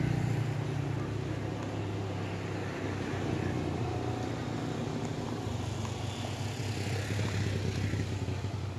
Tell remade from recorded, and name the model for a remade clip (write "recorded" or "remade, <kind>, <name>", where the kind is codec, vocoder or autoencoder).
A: recorded